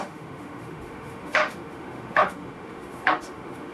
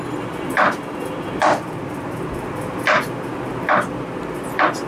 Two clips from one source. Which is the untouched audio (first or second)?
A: second